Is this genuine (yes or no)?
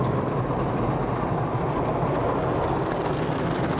yes